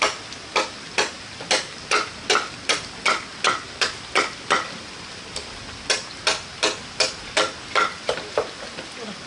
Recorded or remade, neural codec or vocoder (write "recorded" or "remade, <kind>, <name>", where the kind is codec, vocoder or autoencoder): recorded